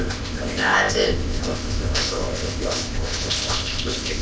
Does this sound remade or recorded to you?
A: remade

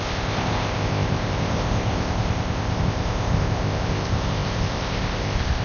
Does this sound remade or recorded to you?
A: remade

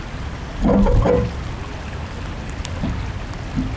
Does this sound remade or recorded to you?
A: recorded